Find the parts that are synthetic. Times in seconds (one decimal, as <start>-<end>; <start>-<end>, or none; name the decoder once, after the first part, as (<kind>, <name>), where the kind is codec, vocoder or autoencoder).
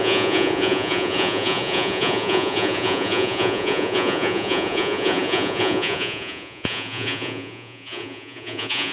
0.0-8.9 (vocoder, Vocos)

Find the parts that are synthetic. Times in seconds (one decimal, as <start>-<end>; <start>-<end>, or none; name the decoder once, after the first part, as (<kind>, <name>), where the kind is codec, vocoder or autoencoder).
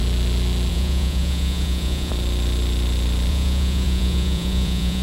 0.7-2.1 (vocoder, Vocos); 3.3-5.0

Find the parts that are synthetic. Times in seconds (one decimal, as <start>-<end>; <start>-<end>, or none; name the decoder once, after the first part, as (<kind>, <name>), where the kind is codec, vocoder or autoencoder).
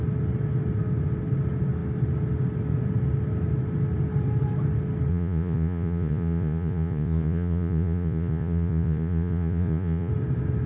5.1-10.1 (vocoder, Vocos)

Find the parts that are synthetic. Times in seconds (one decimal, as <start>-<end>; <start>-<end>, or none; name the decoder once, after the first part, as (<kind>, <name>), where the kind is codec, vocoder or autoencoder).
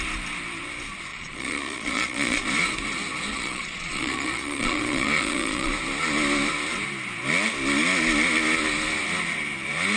1.1-2.4 (vocoder, Vocos); 3.3-5.7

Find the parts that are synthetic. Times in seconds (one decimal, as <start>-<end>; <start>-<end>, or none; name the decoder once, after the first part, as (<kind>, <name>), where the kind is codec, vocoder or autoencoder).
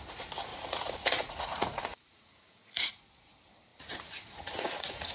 0.5-2.9 (vocoder, Vocos); 3.7-5.1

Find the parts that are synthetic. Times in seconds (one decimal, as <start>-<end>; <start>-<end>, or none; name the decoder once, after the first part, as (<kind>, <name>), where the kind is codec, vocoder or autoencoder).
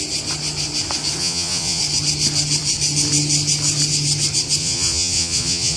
1.2-1.8 (vocoder, Vocos); 4.6-5.8